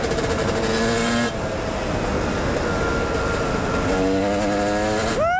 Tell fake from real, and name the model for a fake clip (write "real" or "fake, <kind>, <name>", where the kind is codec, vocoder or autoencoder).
real